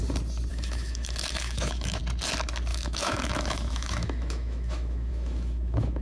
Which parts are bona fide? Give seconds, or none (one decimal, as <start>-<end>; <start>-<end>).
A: 0.0-0.5; 2.0-2.7